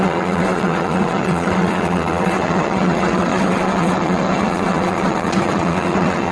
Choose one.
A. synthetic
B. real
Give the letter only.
A